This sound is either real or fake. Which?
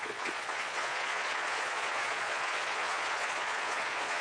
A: fake